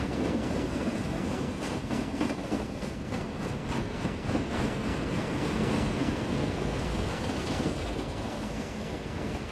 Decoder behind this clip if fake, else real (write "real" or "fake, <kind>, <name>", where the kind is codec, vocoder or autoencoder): fake, codec, SNAC